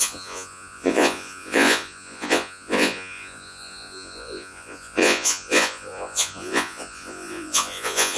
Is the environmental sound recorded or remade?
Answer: remade